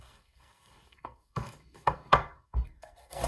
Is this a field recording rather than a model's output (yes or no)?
no